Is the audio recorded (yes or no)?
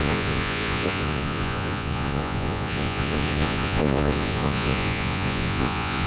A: no